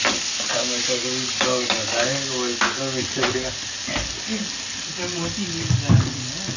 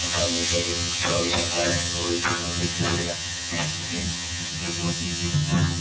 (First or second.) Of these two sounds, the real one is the first